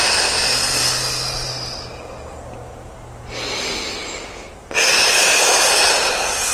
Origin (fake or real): real